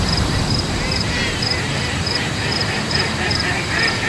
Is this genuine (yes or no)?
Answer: no